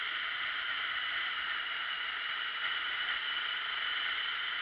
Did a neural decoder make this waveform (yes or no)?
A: no